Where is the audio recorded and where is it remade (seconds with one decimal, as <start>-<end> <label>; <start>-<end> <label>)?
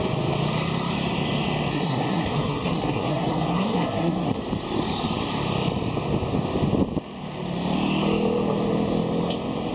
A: 0.0-1.7 recorded; 1.7-4.4 remade; 4.4-9.7 recorded